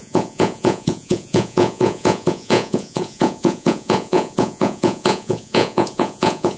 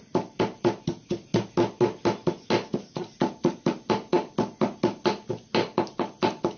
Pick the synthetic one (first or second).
first